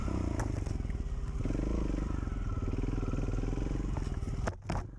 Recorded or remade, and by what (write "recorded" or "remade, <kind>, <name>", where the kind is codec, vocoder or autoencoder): recorded